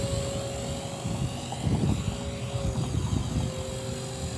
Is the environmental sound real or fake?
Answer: real